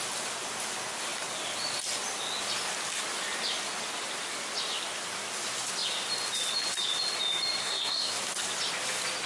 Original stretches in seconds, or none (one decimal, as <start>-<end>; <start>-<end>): 0.0-7.6; 8.2-9.3

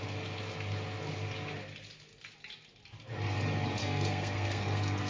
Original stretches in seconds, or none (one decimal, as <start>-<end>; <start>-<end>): 0.0-3.8

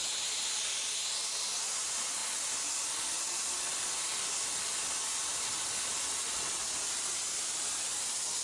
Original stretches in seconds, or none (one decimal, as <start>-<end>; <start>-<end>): 0.0-8.4

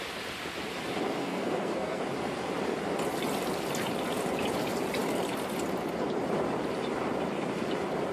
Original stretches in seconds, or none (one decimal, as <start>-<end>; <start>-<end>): 0.0-1.2; 2.0-8.1

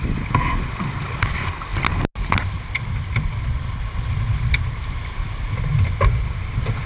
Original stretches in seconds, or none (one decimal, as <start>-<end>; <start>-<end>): 0.0-6.9

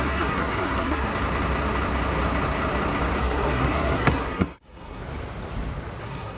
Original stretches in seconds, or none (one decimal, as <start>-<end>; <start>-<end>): 1.1-3.2; 5.0-6.0

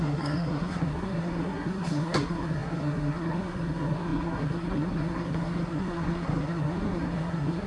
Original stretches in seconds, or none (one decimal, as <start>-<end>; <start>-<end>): none

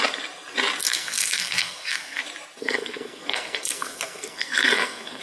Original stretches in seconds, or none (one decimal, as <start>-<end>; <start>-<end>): 0.0-0.8; 2.2-2.6